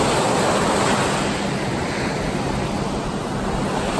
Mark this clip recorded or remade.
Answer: recorded